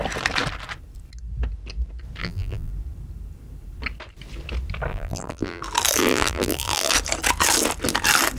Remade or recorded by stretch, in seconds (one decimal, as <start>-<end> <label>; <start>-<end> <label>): 0.0-2.2 recorded; 2.2-2.7 remade; 2.7-4.9 recorded; 4.9-5.6 remade; 5.6-6.0 recorded; 6.0-6.9 remade; 6.9-8.4 recorded